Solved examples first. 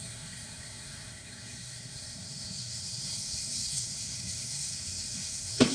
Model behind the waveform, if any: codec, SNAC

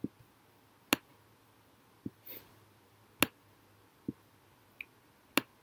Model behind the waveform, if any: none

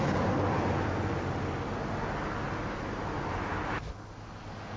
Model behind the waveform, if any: none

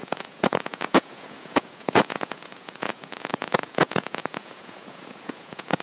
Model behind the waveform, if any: vocoder, Vocos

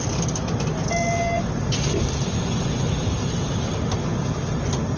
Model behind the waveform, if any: none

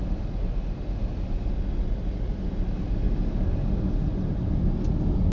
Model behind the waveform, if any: none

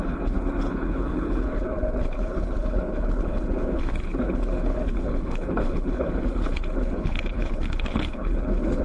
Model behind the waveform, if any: codec, HILCodec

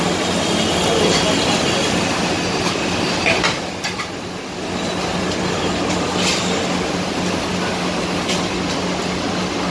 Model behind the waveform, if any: none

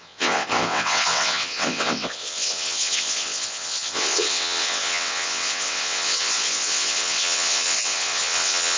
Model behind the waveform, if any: vocoder, WaveNeXt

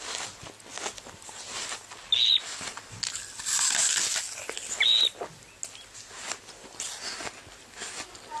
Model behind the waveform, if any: none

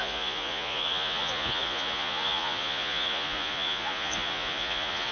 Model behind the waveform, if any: vocoder, Vocos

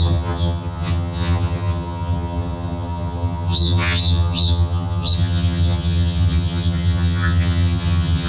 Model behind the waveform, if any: vocoder, HiFi-GAN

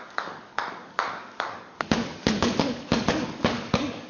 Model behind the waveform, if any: codec, DAC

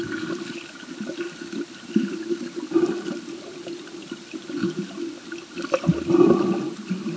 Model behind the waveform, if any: none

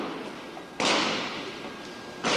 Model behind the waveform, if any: none